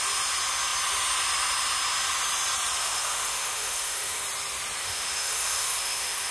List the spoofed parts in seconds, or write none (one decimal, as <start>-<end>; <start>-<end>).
2.8-4.2; 4.8-6.3